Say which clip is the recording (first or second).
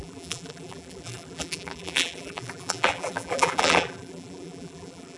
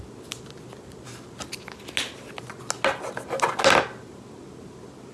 second